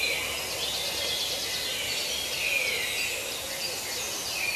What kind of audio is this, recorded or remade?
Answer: recorded